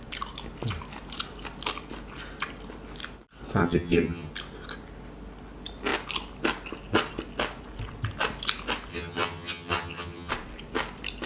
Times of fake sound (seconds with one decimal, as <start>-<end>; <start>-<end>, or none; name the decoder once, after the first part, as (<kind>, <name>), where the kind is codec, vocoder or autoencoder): 3.6-4.3 (vocoder, HiFi-GAN); 8.9-10.3